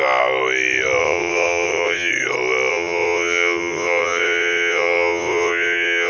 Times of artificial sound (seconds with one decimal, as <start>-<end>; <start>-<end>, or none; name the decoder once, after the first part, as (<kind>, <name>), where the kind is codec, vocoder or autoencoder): 1.0-2.1 (vocoder, WaveNeXt); 2.7-6.1